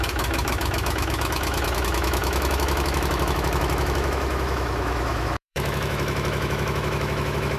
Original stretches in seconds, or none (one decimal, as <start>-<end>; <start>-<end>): none